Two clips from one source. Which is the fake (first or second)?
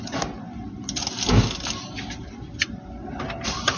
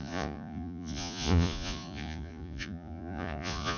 second